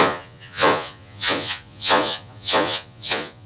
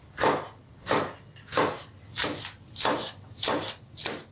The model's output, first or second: first